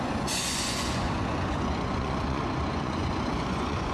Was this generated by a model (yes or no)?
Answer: yes